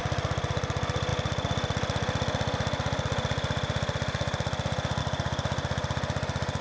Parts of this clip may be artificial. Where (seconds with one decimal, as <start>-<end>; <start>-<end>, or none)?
none